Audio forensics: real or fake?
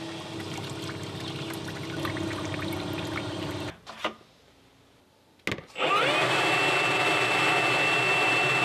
real